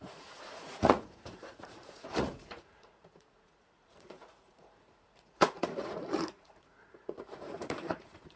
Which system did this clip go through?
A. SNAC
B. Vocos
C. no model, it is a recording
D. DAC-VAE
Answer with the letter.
B